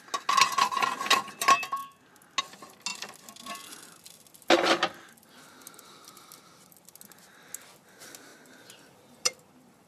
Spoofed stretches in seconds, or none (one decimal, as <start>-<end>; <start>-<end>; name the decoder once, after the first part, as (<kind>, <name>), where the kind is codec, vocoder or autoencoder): none